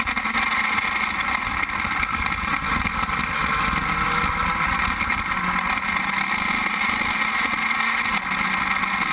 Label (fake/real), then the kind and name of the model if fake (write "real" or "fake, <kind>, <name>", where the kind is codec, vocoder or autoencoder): real